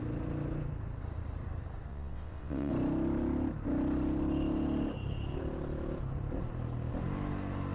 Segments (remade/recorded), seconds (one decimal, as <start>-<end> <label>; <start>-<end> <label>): 0.0-1.9 recorded; 1.9-2.7 remade; 2.7-7.7 recorded